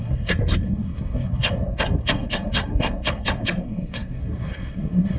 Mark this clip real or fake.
fake